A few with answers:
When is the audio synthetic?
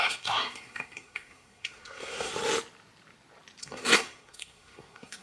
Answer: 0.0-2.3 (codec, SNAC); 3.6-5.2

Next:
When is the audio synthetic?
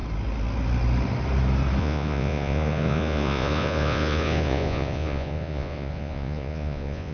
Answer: 1.8-7.1 (vocoder, Vocos)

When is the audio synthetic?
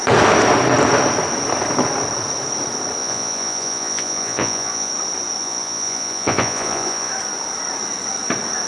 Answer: 3.0-4.9 (vocoder, Vocos); 5.4-7.1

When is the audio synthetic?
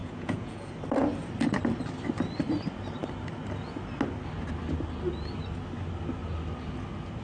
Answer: 0.0-0.7 (vocoder, Vocos)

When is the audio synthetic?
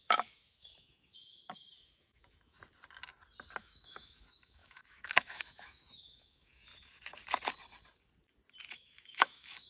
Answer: 0.0-2.6 (autoencoder, DAC-VAE); 3.6-6.7; 8.7-9.7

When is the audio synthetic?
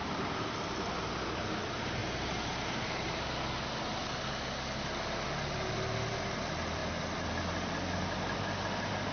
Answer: 0.0-0.5 (vocoder, BigVGAN v2); 2.0-3.1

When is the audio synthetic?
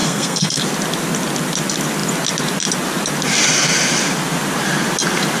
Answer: 0.0-0.6 (codec, SNAC)